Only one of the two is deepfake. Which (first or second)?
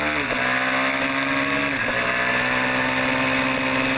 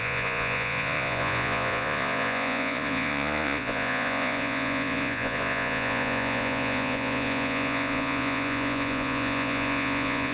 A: second